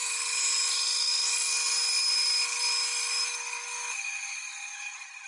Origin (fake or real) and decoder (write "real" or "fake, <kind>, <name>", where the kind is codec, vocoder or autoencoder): real